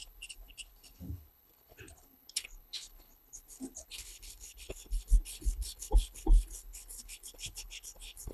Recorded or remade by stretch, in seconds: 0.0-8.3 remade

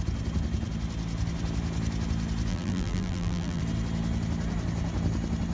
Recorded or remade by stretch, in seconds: 0.0-2.5 recorded; 2.5-3.6 remade; 3.6-5.5 recorded

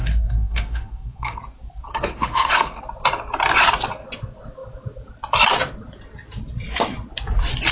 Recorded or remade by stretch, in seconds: 0.0-1.4 remade; 1.4-1.9 recorded; 1.9-2.8 remade; 2.8-7.7 recorded

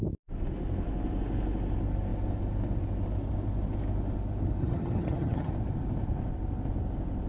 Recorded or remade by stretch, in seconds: 0.0-4.6 recorded; 4.6-5.5 remade; 5.5-7.3 recorded

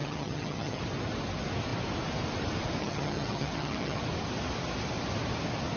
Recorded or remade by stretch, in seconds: 0.0-0.8 remade; 0.8-2.8 recorded; 2.8-4.0 remade; 4.0-5.8 recorded

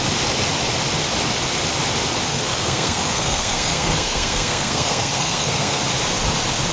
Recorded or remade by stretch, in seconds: 0.0-2.3 recorded; 2.3-5.8 remade; 5.8-6.7 recorded